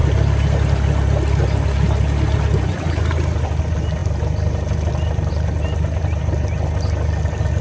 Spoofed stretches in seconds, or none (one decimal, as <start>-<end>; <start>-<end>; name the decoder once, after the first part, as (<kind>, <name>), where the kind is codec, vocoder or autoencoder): none